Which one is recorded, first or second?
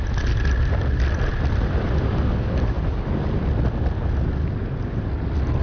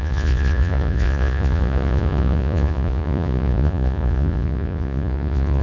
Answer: first